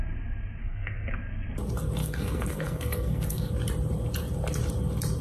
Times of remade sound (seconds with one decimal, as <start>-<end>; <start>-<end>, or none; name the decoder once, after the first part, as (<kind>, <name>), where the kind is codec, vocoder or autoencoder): 0.6-1.1 (codec, SNAC); 2.0-3.5